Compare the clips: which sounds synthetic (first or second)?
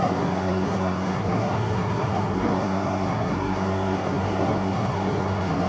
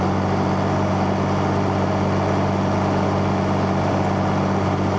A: first